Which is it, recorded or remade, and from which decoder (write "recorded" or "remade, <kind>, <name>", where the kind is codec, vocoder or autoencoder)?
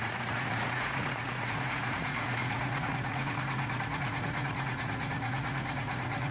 remade, vocoder, Vocos